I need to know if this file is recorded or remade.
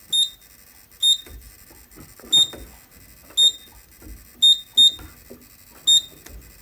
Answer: recorded